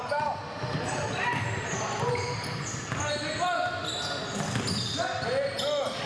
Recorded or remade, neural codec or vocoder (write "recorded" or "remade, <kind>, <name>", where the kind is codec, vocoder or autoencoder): recorded